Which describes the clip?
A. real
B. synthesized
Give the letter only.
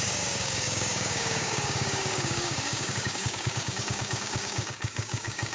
B